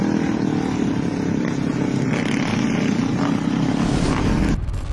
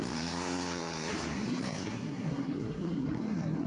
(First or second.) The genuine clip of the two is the first